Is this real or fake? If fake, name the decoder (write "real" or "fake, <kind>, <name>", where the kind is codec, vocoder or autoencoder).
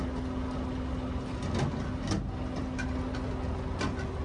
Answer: real